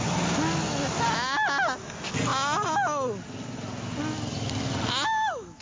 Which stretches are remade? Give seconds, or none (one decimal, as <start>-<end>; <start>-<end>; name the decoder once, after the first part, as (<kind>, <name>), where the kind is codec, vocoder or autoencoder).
none